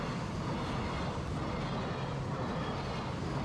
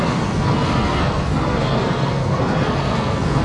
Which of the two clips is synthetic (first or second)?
second